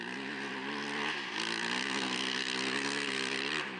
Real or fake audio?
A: real